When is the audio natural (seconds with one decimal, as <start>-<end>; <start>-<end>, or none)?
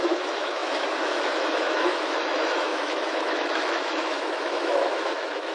none